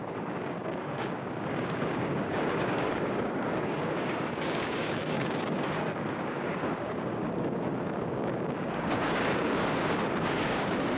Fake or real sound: fake